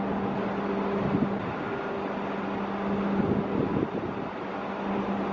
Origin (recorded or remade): recorded